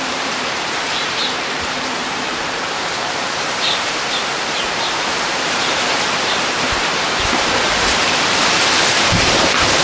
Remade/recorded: remade